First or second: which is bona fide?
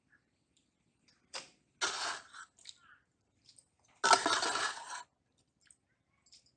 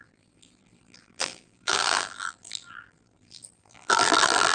first